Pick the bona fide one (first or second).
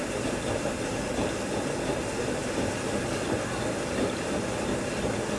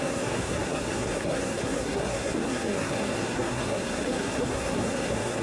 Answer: first